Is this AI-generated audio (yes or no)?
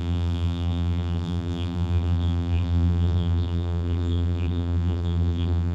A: yes